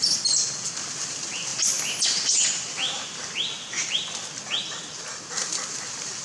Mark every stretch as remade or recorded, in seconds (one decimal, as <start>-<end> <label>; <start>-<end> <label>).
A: 0.0-6.2 recorded